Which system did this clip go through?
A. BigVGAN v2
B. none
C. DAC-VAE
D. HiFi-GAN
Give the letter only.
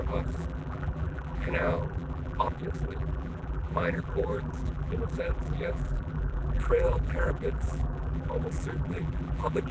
A